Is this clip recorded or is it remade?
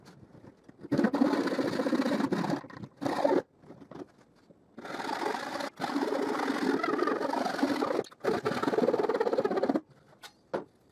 recorded